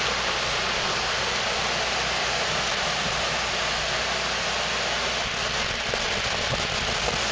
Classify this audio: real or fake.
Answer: real